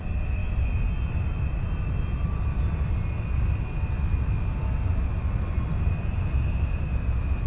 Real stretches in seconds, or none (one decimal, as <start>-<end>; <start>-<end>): 0.0-7.5